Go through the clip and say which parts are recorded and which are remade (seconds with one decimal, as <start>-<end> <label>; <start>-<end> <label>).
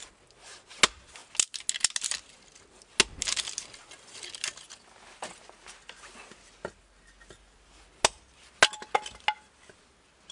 0.0-10.3 recorded